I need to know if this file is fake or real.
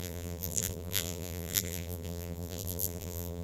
fake